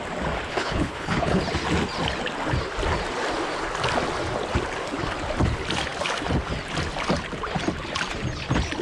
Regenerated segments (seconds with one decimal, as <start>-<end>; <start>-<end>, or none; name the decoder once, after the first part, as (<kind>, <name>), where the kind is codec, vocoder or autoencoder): 0.5-1.4 (codec, HILCodec)